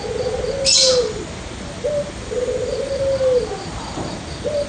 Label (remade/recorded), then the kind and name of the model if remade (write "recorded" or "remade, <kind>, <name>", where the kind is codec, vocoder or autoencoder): recorded